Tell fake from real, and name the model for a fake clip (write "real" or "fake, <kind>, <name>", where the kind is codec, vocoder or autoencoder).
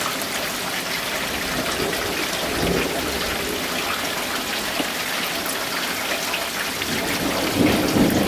real